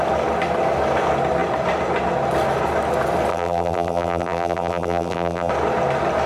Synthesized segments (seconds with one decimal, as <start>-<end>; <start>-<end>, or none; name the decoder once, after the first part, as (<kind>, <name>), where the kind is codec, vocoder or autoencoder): 3.3-5.5 (vocoder, BigVGAN v2)